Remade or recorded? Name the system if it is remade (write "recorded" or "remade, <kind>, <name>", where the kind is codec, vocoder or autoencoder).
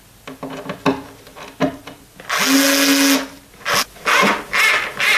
recorded